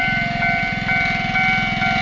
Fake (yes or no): no